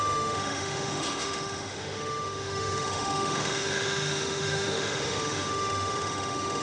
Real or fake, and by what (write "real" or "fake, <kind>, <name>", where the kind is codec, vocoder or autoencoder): fake, autoencoder, DAC-VAE